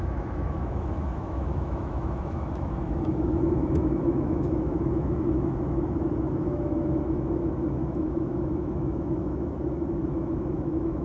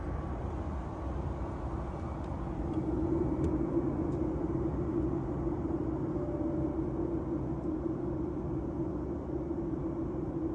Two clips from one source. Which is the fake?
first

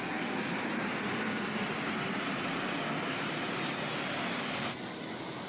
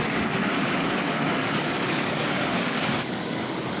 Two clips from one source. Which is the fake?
second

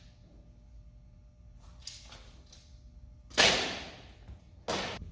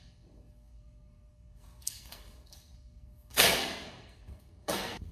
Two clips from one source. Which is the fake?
second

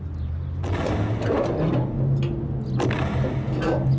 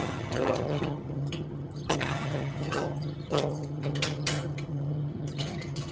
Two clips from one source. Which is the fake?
second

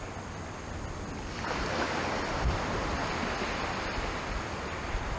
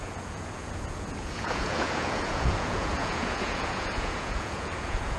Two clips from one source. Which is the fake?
second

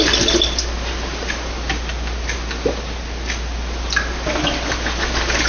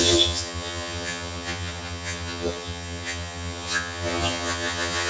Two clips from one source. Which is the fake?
second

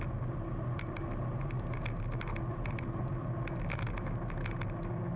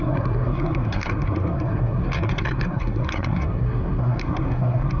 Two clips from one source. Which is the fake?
second